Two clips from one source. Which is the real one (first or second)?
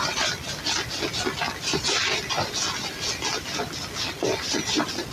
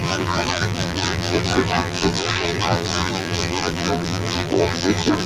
first